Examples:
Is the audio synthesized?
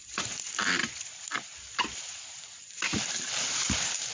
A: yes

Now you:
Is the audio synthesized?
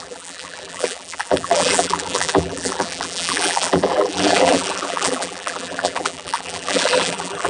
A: yes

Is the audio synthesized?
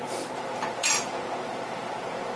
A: yes